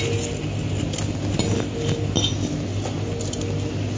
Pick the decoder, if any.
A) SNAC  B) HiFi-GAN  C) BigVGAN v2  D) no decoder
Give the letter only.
D